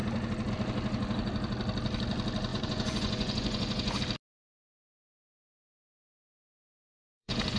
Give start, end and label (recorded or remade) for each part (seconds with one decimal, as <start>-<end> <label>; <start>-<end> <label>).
0.0-2.5 recorded; 2.5-4.0 remade; 4.0-5.1 recorded; 5.1-7.6 remade